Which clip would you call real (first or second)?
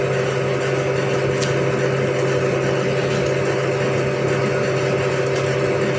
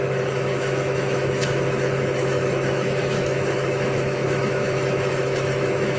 first